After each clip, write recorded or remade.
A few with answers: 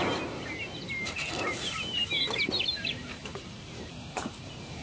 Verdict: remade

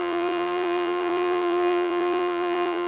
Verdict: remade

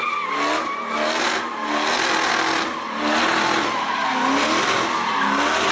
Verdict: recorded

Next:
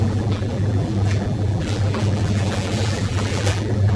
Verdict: remade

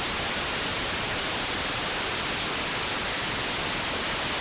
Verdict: recorded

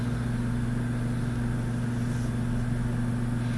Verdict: recorded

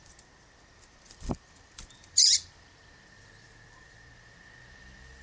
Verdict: remade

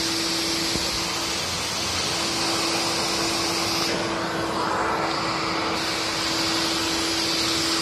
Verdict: recorded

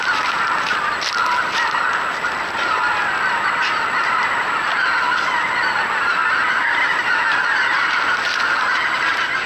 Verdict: remade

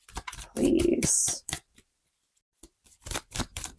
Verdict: remade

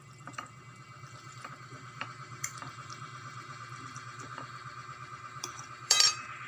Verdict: remade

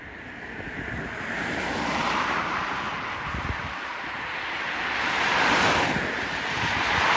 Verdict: remade